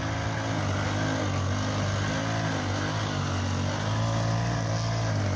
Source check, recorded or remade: recorded